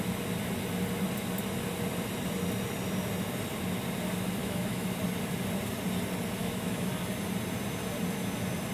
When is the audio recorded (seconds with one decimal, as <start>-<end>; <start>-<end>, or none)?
0.0-4.4; 4.9-6.4; 6.9-8.7